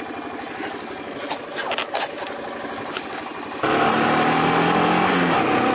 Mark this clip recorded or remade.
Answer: recorded